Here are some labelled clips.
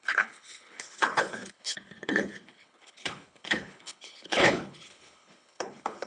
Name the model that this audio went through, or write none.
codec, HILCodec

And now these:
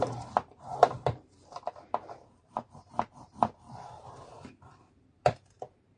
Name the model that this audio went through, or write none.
vocoder, BigVGAN v2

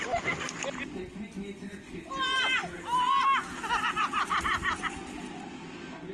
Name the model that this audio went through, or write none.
none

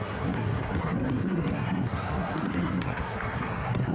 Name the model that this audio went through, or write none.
codec, SNAC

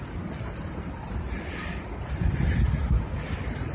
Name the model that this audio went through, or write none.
none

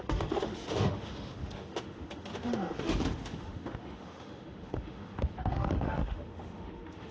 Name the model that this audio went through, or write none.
autoencoder, DAC-VAE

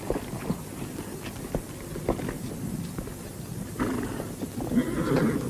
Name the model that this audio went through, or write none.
none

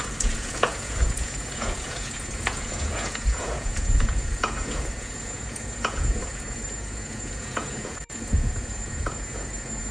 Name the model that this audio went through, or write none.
vocoder, Vocos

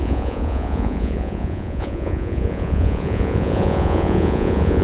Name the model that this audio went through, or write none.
vocoder, Vocos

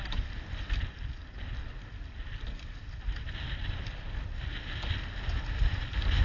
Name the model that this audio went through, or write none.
none